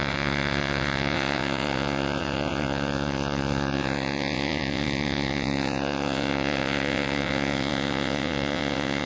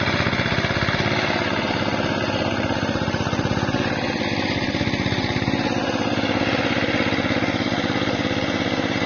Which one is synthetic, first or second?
first